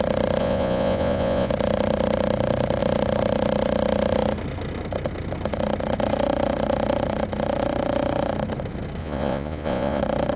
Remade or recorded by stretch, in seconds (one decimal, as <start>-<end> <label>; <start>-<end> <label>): 0.0-0.4 recorded; 0.4-1.5 remade; 1.5-9.0 recorded; 9.0-10.0 remade; 10.0-10.4 recorded